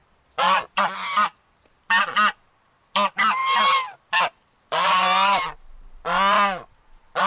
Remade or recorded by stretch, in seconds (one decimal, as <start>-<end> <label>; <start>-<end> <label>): 0.0-0.8 remade; 0.8-7.3 recorded